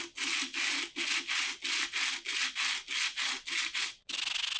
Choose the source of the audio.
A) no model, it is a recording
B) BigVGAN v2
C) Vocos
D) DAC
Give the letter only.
A